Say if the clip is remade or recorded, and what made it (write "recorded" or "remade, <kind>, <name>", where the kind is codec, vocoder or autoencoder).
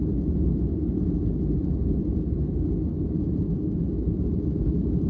recorded